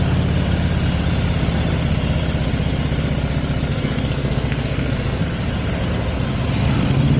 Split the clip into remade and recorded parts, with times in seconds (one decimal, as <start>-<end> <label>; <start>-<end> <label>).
0.0-3.7 recorded; 3.7-5.2 remade; 5.2-7.2 recorded